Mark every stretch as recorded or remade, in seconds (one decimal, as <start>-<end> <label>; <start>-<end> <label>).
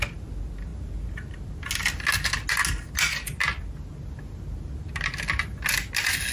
0.0-6.3 recorded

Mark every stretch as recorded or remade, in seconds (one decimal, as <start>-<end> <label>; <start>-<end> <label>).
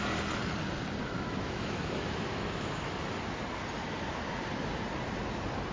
0.0-1.0 recorded; 1.0-2.9 remade; 2.9-5.7 recorded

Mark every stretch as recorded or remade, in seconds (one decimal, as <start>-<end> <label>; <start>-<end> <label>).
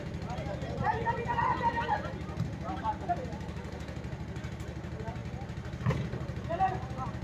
0.0-7.2 recorded